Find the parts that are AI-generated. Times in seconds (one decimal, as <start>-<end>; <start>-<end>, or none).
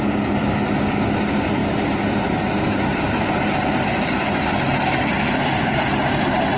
none